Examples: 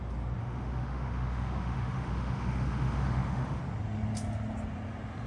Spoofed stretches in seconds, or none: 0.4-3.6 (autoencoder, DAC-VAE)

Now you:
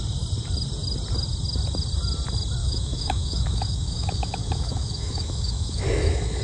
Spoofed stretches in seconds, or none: 2.6-6.4 (autoencoder, DAC-VAE)

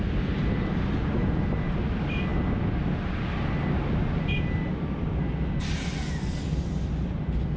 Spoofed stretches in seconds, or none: none

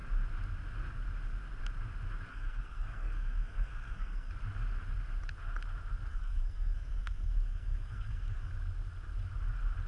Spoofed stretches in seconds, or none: 2.3-4.3 (codec, SNAC); 6.1-8.5

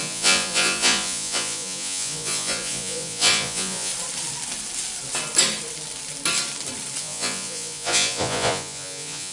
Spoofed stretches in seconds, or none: 0.0-3.9 (vocoder, Vocos); 7.0-9.3

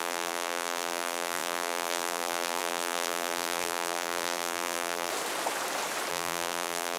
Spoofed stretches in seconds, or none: 0.0-5.1 (vocoder, BigVGAN v2); 6.1-7.0

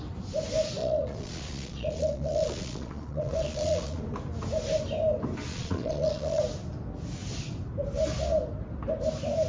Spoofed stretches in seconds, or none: 0.8-4.0 (vocoder, Vocos); 5.5-6.4